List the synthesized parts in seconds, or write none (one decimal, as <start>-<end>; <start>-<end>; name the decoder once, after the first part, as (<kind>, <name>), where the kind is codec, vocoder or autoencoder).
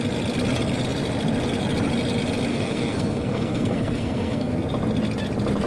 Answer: 2.5-4.5 (codec, SNAC)